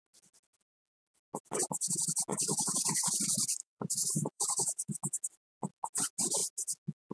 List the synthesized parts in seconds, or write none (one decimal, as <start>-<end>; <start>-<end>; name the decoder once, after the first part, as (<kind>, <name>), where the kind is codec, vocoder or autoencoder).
2.3-3.1 (vocoder, BigVGAN v2); 3.6-4.9